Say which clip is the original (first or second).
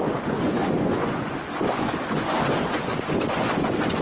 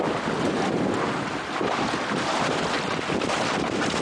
second